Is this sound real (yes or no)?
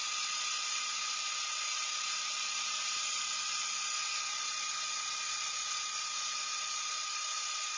yes